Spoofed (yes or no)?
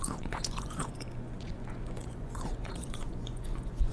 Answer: yes